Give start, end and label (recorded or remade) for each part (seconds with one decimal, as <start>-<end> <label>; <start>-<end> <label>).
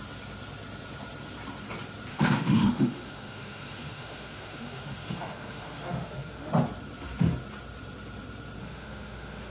0.0-2.1 recorded; 2.1-6.5 remade; 6.5-8.6 recorded; 8.6-9.5 remade